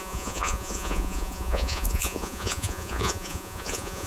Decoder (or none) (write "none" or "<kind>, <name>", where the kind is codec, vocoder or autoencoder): vocoder, Vocos